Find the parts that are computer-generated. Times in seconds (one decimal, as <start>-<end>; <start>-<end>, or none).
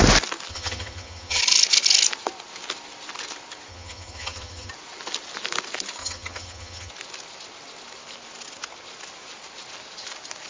0.5-1.4; 3.7-4.7; 6.0-6.9